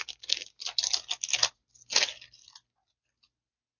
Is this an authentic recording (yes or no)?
yes